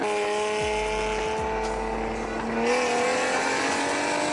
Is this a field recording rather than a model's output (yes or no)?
yes